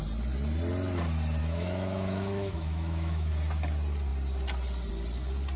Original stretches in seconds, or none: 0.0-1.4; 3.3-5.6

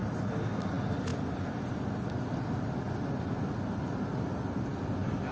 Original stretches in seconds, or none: 0.0-5.3

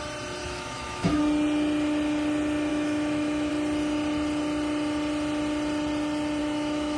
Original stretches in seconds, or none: 0.0-0.4; 1.2-2.7; 3.5-6.4

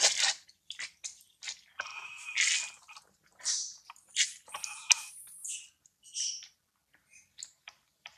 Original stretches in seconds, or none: 0.0-8.2